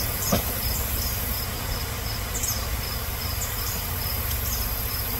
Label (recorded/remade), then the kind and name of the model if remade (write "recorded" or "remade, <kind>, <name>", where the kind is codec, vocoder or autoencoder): remade, vocoder, BigVGAN v2